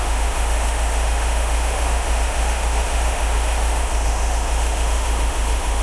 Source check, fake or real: fake